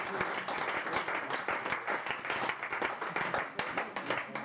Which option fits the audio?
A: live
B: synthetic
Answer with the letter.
A